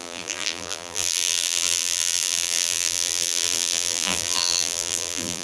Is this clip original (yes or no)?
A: no